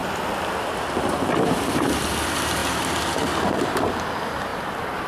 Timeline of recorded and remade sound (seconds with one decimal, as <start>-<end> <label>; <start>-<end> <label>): 0.0-0.5 recorded; 0.5-5.1 remade